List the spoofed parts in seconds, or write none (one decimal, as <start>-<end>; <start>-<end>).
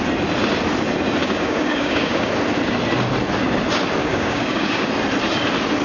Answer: 1.2-2.3; 4.0-4.9